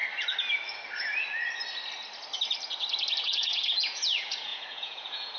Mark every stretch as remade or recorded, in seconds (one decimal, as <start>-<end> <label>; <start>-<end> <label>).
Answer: 0.0-3.2 recorded; 3.2-5.4 remade